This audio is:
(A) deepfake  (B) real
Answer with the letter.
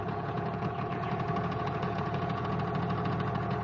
A